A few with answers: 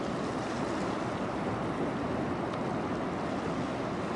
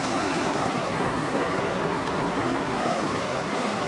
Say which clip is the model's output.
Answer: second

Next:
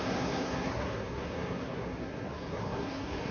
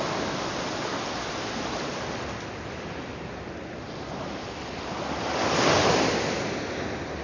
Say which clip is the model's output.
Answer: first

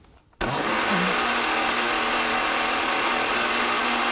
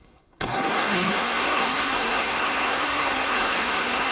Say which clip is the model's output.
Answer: second